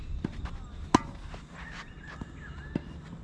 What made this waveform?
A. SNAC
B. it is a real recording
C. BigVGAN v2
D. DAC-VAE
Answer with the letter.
B